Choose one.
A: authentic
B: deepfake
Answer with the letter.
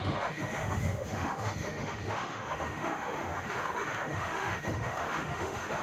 B